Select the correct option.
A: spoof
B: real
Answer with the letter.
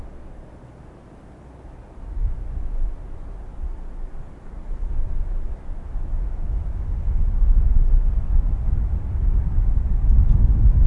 B